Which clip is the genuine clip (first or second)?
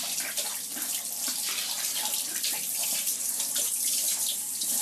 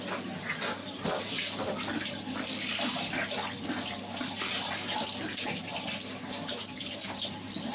second